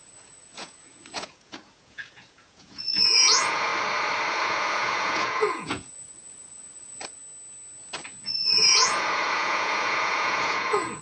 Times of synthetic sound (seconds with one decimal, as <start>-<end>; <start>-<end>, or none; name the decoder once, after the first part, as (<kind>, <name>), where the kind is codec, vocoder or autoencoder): 0.0-3.7 (vocoder, Vocos); 4.3-7.2; 8.2-11.0